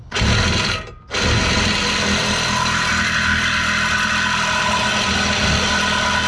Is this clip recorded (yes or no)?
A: yes